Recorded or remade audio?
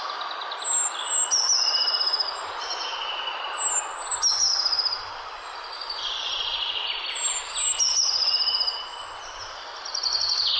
recorded